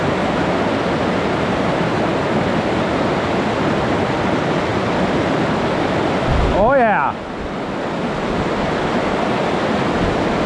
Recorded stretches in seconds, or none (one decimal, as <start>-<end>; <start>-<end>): 0.0-10.5